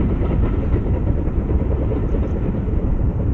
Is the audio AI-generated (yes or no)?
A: yes